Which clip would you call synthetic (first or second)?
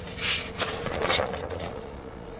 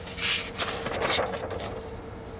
first